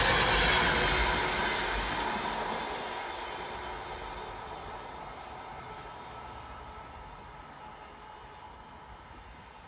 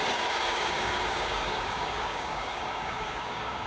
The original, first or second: first